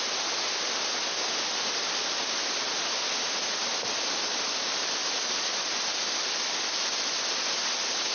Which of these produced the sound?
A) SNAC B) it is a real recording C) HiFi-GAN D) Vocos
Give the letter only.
B